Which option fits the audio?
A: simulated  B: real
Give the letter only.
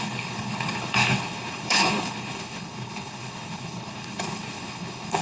A